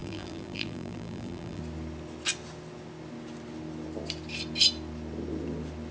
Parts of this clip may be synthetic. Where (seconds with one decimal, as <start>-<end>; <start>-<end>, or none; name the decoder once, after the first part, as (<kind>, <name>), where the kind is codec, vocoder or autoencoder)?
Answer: 0.0-1.6 (vocoder, BigVGAN v2)

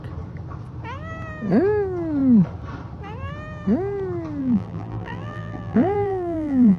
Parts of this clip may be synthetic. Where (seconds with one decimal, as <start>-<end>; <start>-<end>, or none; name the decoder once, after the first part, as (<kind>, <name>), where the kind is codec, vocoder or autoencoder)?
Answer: 4.4-6.8 (vocoder, BigVGAN v2)